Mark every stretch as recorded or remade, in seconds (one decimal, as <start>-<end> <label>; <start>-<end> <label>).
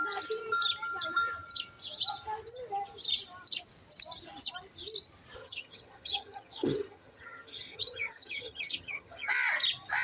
0.0-5.4 recorded; 5.4-9.3 remade; 9.3-10.0 recorded